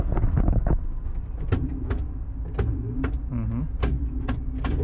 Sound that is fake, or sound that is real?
real